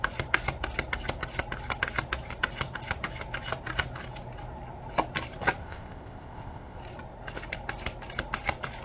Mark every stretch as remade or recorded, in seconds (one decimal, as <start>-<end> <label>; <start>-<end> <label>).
0.0-5.6 recorded; 5.6-6.8 remade; 6.8-8.8 recorded